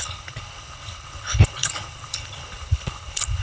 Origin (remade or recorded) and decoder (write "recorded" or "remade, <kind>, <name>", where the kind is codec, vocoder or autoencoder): remade, codec, HILCodec